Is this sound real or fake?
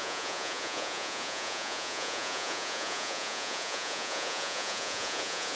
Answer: fake